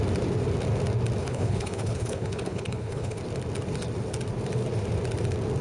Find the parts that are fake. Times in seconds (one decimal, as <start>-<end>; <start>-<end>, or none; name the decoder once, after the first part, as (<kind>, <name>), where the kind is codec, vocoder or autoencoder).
1.2-3.2 (codec, HILCodec)